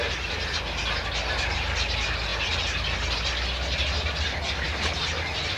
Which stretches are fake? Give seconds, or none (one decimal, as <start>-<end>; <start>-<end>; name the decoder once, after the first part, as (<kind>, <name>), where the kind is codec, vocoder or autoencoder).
none